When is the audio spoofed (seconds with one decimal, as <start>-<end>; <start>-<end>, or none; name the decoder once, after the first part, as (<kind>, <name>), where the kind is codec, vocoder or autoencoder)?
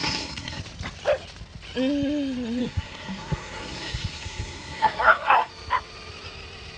0.0-0.6 (codec, SNAC); 2.6-5.5